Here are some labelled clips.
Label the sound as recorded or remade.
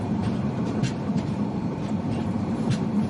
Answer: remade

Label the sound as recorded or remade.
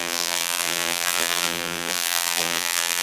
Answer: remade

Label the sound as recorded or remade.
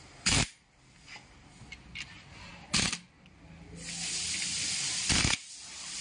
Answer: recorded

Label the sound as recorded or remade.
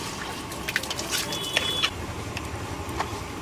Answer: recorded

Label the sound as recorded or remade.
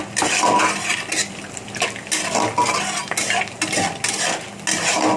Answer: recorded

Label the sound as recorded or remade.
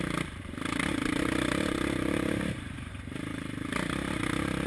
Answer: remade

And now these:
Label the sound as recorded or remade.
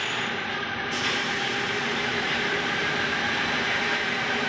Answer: remade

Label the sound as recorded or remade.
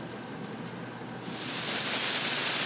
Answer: recorded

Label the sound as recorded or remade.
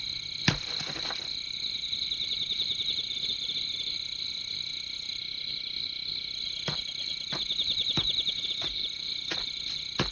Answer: remade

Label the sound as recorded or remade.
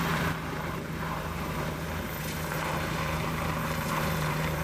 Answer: remade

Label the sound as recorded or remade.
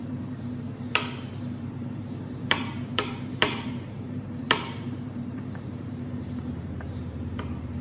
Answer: remade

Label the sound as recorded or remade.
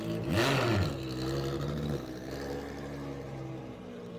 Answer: recorded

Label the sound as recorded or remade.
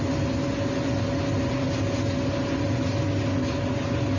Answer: recorded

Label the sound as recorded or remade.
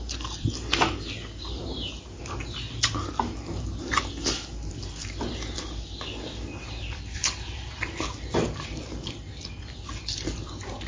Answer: remade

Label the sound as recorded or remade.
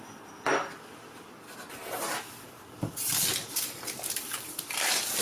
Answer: remade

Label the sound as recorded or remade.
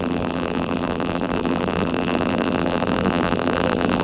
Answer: remade